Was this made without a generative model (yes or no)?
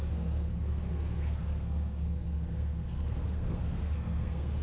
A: no